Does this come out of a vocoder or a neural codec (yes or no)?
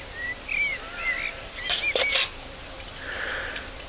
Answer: yes